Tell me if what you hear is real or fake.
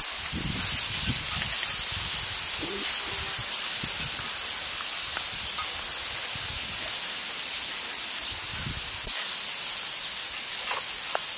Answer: real